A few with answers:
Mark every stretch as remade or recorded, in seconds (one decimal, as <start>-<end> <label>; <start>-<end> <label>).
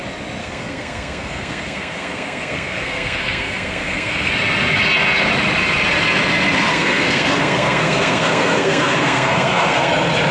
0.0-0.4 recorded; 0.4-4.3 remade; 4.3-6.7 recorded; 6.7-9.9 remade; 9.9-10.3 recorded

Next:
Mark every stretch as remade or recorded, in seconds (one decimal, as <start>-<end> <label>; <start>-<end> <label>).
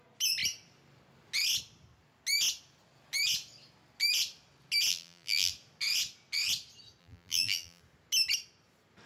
0.0-4.9 recorded; 4.9-5.5 remade; 5.5-7.0 recorded; 7.0-7.8 remade; 7.8-9.1 recorded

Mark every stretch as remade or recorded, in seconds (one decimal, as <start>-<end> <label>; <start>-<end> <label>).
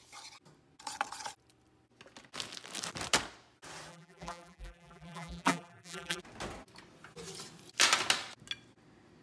0.0-3.9 recorded; 3.9-6.2 remade; 6.2-9.2 recorded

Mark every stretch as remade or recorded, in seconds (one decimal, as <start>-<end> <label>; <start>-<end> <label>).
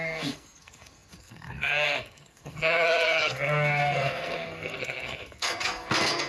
0.0-6.3 remade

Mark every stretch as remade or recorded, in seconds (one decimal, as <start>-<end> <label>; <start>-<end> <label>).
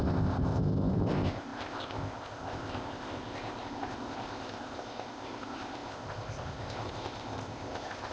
0.0-8.1 remade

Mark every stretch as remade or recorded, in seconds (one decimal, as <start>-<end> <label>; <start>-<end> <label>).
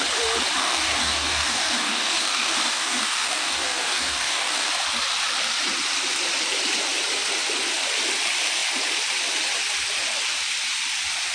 0.0-0.6 recorded; 0.6-4.7 remade; 4.7-11.3 recorded